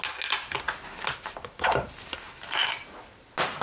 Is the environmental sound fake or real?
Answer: real